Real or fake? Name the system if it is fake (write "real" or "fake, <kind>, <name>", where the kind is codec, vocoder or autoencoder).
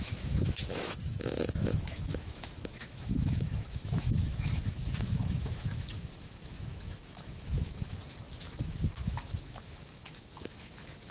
fake, autoencoder, DAC-VAE